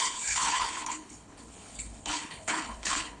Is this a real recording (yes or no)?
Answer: no